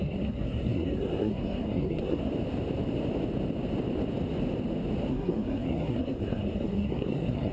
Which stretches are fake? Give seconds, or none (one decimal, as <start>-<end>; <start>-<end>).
0.0-2.3; 5.1-7.5